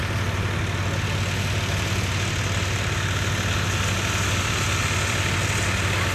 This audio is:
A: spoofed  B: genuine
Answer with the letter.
B